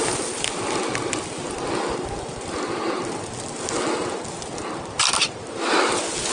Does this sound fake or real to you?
real